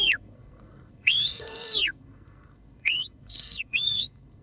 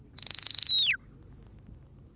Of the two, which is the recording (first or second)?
second